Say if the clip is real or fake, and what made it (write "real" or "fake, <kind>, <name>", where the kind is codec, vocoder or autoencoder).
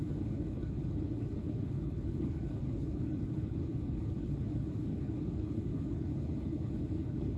fake, codec, HILCodec